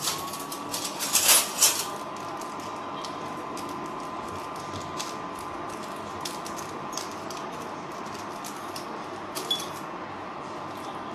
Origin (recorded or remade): recorded